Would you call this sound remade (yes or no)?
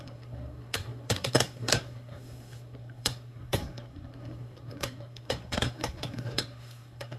yes